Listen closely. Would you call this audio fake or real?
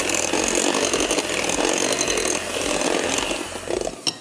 real